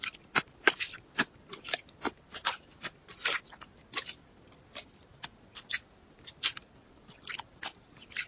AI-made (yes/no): no